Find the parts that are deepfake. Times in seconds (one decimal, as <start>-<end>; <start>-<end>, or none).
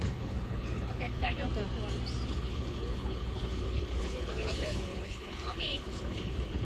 0.0-1.4; 2.3-6.6